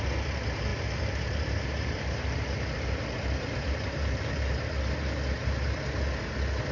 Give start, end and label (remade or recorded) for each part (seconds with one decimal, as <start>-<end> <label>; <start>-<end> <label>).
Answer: 0.0-0.7 recorded; 0.7-4.7 remade; 4.7-6.7 recorded